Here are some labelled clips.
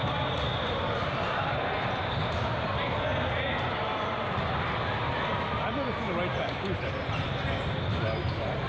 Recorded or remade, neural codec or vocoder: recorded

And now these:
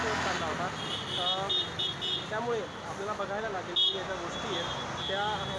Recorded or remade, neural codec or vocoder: recorded